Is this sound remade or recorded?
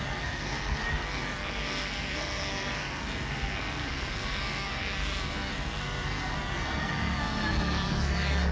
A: remade